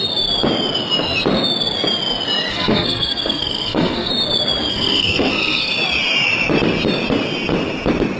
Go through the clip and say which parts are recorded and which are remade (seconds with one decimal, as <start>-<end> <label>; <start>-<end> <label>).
0.0-2.5 recorded; 2.5-4.1 remade; 4.1-4.7 recorded; 4.7-5.7 remade; 5.7-8.2 recorded